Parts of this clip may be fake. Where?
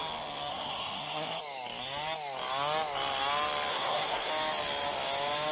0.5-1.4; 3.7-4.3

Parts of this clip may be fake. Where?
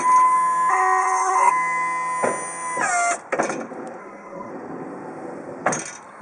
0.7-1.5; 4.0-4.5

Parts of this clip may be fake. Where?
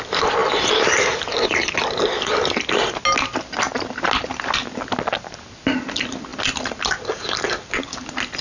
none